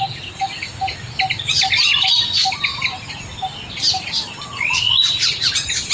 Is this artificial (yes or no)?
no